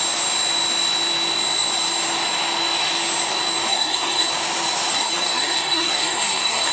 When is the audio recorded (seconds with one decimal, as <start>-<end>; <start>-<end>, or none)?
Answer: 0.0-3.7; 4.3-4.9